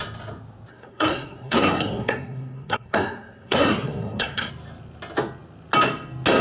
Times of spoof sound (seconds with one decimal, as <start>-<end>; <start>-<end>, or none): 0.7-4.5